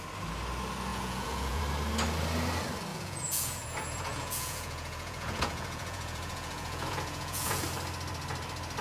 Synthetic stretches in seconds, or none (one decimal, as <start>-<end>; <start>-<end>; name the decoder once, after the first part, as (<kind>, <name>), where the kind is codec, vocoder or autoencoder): 0.9-1.6 (vocoder, Vocos); 2.9-7.6